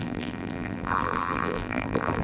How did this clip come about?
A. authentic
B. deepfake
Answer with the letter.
B